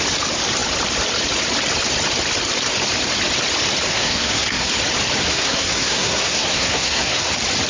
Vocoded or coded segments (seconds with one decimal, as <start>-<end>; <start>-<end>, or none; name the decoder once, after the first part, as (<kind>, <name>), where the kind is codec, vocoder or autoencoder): 3.9-4.7 (codec, SNAC); 5.2-7.3